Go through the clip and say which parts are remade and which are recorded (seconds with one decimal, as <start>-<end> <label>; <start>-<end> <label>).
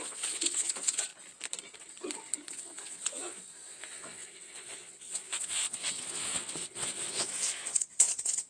0.0-1.1 remade; 1.1-2.5 recorded; 2.5-8.5 remade